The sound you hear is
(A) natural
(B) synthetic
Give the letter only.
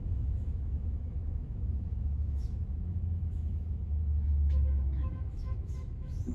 B